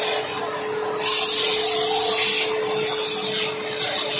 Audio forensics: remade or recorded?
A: recorded